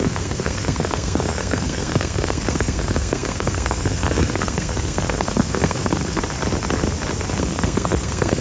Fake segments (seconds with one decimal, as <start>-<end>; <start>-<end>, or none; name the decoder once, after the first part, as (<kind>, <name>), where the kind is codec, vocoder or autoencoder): 0.0-6.2 (codec, SNAC); 7.4-8.4